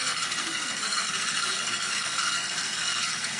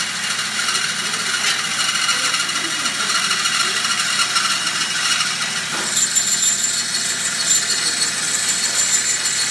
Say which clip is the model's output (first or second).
first